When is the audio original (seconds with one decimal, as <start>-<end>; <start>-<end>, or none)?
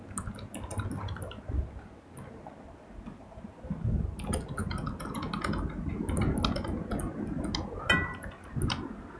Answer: 0.0-9.2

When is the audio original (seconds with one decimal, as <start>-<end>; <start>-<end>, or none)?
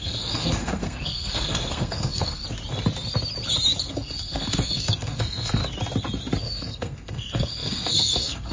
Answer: 2.4-3.8; 5.6-6.4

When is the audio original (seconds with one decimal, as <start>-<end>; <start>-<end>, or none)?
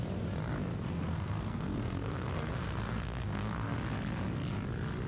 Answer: 0.0-0.7; 3.8-5.1